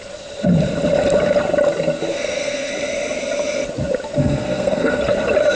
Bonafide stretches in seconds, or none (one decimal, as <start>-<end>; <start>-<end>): 0.0-2.1; 2.7-4.2; 5.0-5.6